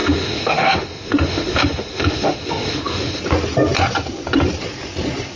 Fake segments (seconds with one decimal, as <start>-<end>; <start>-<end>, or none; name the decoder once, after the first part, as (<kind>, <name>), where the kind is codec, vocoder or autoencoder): 0.0-3.2 (autoencoder, DAC-VAE)